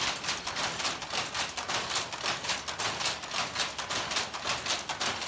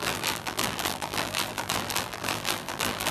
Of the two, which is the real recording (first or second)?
first